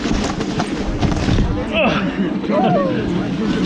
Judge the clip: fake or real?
real